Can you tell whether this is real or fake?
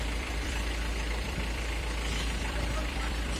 fake